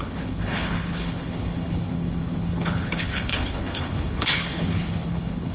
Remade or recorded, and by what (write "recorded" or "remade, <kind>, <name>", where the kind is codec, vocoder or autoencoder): remade, codec, HILCodec